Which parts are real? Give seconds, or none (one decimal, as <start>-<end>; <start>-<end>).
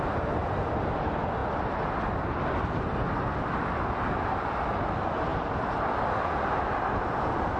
0.0-7.6